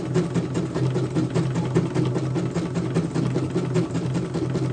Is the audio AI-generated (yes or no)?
no